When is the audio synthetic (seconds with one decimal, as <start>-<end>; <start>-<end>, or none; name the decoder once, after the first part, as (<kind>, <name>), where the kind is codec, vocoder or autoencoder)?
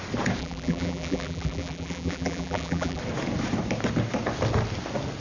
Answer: 0.4-3.0 (vocoder, BigVGAN v2)